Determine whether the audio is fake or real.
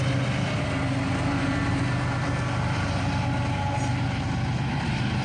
real